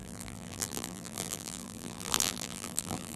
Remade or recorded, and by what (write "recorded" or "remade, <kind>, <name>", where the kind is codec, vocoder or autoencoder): remade, vocoder, BigVGAN v2